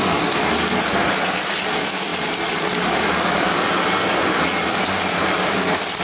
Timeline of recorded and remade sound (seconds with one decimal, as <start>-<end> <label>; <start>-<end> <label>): 0.0-6.0 recorded